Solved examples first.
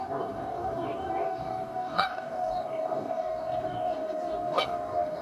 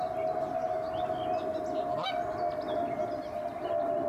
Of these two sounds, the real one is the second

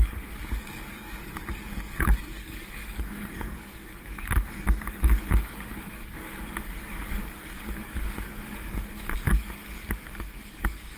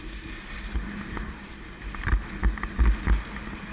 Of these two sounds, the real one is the second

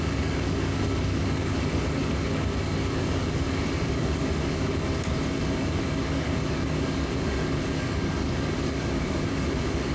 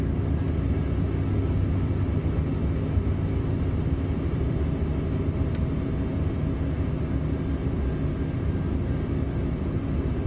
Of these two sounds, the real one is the second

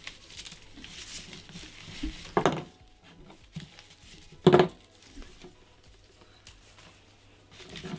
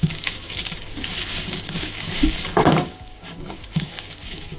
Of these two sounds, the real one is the first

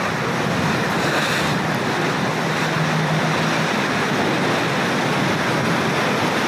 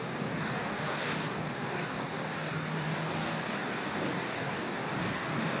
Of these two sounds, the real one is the first